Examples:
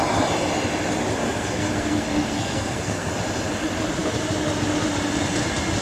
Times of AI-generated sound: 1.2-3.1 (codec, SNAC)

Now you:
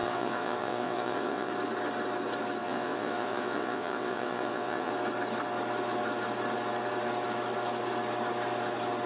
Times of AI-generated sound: 0.0-1.5 (vocoder, WaveNeXt); 2.6-4.9